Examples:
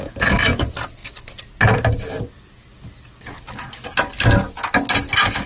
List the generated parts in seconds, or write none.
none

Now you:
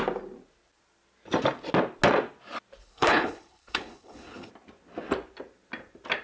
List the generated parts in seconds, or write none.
2.8-4.5